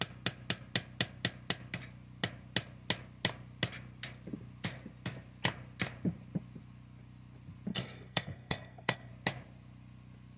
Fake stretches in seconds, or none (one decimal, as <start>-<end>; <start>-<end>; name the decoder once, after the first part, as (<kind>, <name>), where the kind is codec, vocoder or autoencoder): 7.7-9.1 (codec, SNAC)